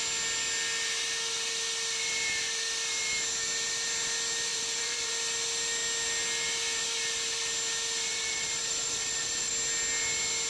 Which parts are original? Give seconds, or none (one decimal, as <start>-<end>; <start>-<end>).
0.0-4.5; 5.1-8.1; 9.5-10.5